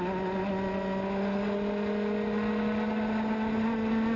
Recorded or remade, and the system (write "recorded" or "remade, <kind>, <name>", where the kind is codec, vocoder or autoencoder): recorded